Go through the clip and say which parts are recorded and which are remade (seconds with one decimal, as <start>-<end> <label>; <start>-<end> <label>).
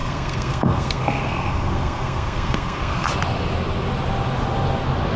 0.0-3.1 remade; 3.1-5.2 recorded